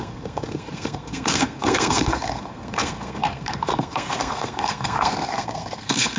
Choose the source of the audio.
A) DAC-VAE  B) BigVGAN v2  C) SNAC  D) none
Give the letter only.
C